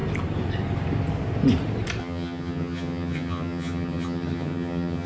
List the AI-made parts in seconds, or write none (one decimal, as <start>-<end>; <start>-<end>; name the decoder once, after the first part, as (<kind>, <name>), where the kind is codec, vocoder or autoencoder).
2.0-5.1 (vocoder, HiFi-GAN)